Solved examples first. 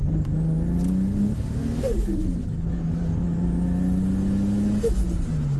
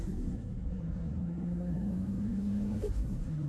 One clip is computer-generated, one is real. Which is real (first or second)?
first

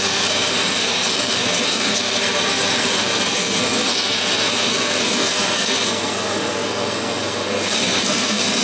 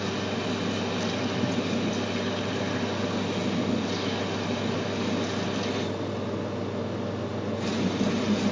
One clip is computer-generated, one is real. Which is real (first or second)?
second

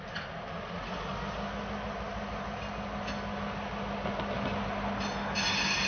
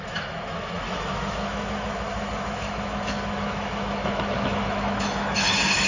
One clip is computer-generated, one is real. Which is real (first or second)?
first